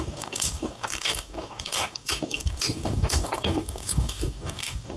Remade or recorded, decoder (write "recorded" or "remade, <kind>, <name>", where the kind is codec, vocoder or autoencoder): remade, codec, DAC